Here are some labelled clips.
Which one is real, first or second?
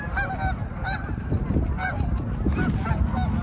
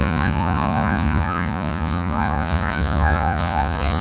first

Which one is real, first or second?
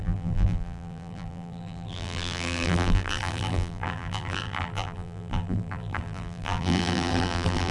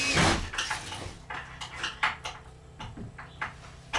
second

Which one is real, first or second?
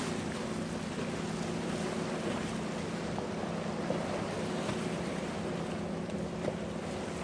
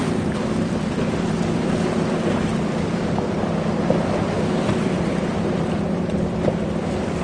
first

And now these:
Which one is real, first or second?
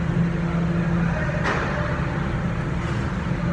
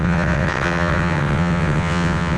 first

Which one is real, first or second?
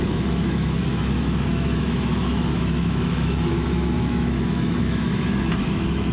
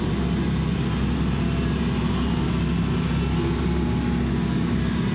second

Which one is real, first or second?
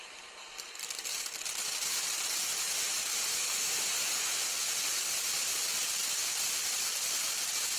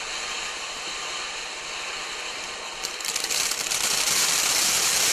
first